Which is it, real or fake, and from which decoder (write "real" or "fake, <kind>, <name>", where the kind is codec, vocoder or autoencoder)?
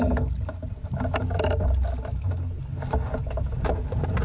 real